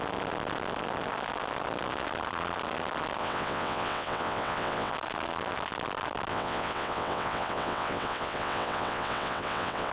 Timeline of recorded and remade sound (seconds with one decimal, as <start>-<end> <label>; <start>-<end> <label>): 0.0-3.2 recorded; 3.2-4.9 remade; 4.9-6.3 recorded; 6.3-9.9 remade